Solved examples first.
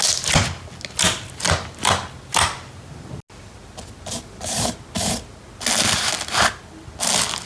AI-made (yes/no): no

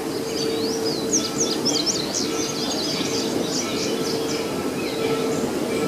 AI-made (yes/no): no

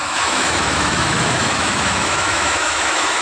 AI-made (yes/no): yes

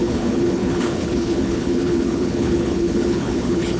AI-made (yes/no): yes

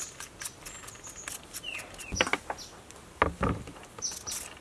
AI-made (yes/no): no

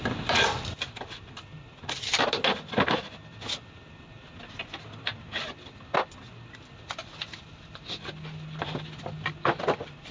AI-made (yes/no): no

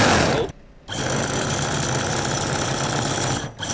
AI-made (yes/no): no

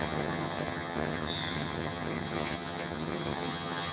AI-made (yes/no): yes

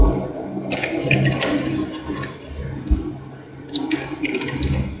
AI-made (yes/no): no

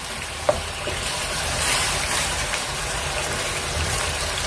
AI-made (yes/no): yes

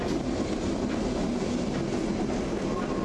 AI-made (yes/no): no